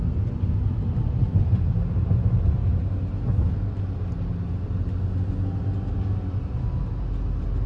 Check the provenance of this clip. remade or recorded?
recorded